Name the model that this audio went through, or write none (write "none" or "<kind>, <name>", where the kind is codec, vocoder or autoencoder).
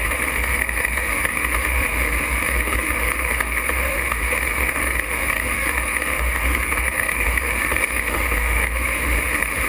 autoencoder, DAC-VAE